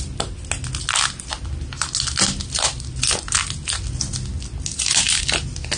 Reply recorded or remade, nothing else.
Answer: recorded